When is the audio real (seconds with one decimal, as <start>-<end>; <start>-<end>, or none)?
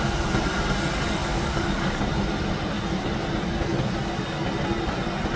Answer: 0.0-1.2; 2.0-5.4